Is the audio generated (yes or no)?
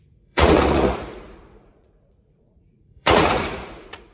yes